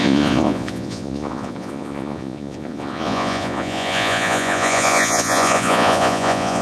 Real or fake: fake